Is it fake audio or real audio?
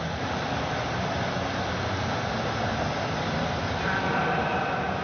real